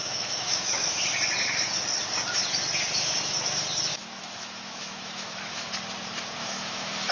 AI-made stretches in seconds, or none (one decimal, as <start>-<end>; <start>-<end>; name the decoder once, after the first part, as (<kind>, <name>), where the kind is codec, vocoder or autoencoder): 0.0-0.9 (autoencoder, DAC-VAE); 3.9-5.7; 6.4-7.1